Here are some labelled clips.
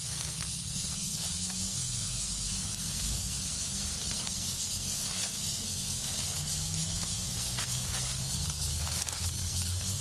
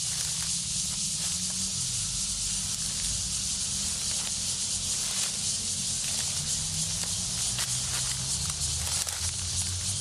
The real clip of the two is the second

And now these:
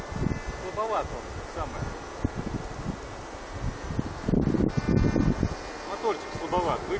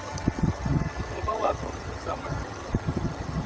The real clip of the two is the first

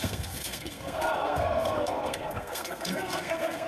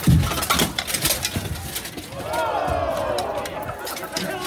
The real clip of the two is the second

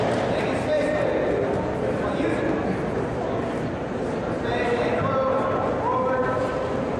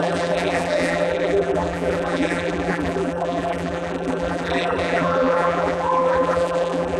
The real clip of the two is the first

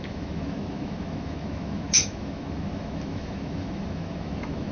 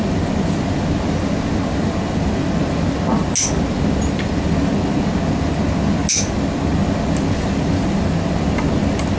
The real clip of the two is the second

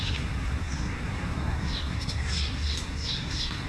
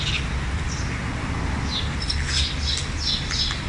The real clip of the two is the second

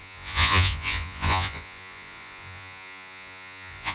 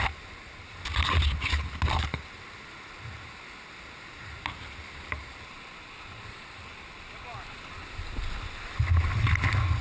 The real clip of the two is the second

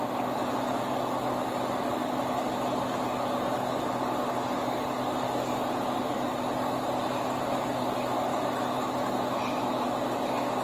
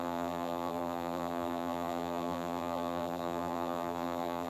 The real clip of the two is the first